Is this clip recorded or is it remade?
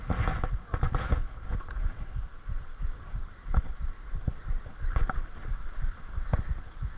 recorded